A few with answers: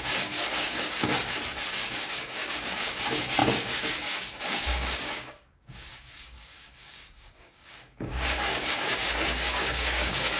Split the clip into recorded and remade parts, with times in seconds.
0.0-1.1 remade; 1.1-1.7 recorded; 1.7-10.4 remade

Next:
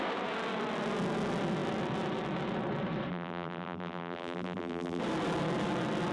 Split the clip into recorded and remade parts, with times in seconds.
0.0-3.1 recorded; 3.1-5.0 remade; 5.0-6.1 recorded

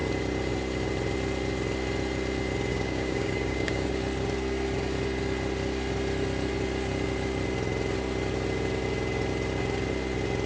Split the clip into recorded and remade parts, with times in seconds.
0.0-2.7 recorded; 2.7-3.9 remade; 3.9-10.5 recorded

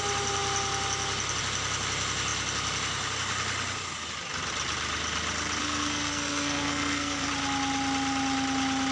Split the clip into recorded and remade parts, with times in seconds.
0.0-5.6 recorded; 5.6-7.3 remade; 7.3-8.9 recorded

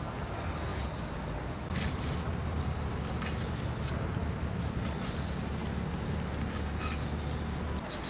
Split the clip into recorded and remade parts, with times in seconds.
0.0-8.1 recorded

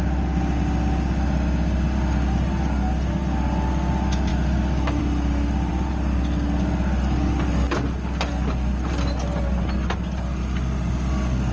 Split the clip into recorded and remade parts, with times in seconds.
0.0-4.3 recorded; 4.3-5.0 remade; 5.0-11.5 recorded